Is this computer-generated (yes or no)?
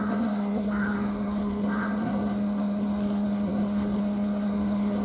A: yes